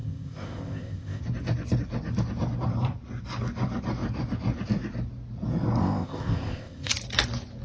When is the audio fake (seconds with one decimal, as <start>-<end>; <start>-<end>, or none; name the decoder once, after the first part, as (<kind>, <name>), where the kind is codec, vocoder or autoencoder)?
0.0-1.2 (codec, ZipCodec); 5.8-6.9